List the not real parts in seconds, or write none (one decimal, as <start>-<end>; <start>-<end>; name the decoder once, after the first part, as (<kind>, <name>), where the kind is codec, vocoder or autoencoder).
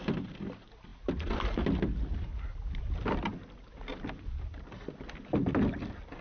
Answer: none